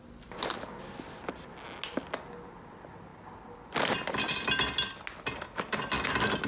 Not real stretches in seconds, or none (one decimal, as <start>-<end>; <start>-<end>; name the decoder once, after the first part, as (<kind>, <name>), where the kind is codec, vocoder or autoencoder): none